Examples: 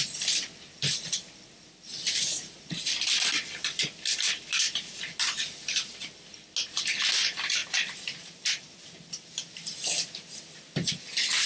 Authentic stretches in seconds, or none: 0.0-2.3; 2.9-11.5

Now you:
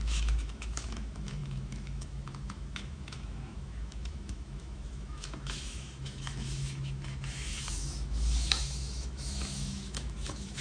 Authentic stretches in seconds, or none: none

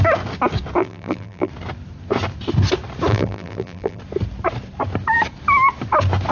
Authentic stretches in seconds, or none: 0.0-0.8; 1.5-3.1; 4.0-6.3

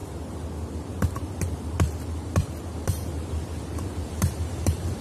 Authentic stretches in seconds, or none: 0.0-0.7

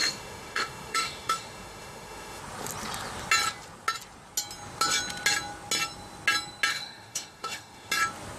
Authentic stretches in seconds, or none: 2.4-6.7; 7.9-8.4

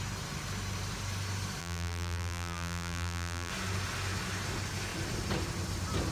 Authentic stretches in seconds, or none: 0.0-1.6; 3.5-6.1

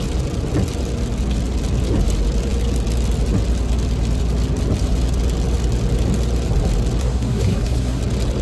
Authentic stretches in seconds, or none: 0.0-7.0; 8.0-8.4

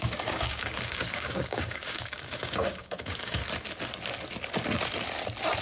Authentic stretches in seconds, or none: 3.4-5.6